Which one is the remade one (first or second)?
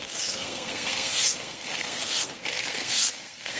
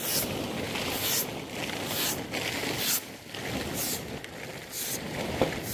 first